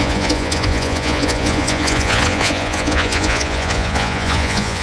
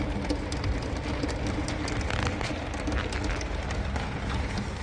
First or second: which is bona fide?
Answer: second